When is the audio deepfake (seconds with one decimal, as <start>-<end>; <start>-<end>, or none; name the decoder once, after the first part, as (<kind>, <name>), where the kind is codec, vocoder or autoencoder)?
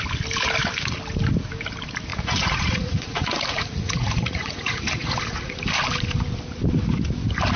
2.1-5.6 (vocoder, Vocos)